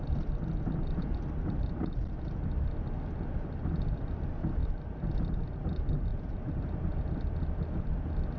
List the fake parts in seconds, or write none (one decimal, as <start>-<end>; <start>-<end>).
4.6-5.1; 6.1-6.6